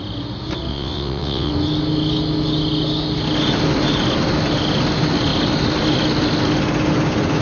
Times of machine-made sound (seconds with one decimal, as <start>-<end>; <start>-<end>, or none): 0.7-1.5